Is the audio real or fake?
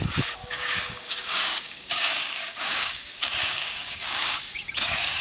fake